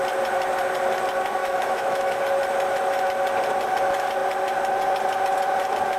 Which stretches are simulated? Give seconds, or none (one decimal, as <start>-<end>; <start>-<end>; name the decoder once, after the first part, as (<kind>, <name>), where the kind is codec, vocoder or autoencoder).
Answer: 1.4-2.2 (autoencoder, DAC-VAE)

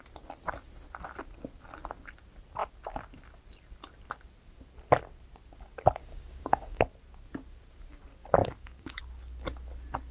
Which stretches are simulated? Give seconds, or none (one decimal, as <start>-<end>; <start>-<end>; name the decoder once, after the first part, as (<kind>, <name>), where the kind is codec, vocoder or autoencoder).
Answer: 6.0-6.8 (codec, DAC); 8.4-9.0

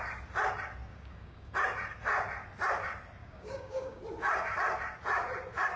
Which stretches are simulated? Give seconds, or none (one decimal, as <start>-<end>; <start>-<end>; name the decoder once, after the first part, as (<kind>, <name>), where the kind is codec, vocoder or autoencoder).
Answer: 0.9-1.5 (codec, DAC); 3.2-4.0

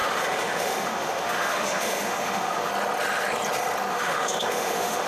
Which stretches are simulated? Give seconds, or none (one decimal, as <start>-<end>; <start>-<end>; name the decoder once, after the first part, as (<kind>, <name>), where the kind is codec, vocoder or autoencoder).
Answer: 0.0-2.7 (autoencoder, DAC-VAE); 3.9-5.1

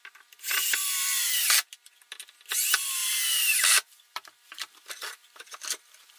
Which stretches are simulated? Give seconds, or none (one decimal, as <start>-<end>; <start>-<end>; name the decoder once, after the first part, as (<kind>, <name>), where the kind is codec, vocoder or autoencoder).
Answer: 0.6-1.7 (vocoder, BigVGAN v2); 3.0-6.2